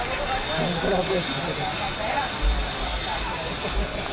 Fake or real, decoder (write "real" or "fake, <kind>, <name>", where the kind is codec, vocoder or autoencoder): real